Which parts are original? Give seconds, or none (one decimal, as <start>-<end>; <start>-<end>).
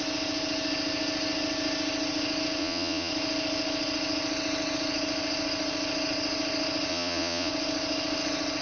0.0-2.6; 3.1-6.9; 7.5-8.6